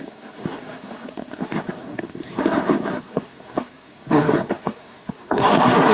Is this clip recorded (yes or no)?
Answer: no